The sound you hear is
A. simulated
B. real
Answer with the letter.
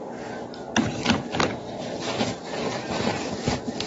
A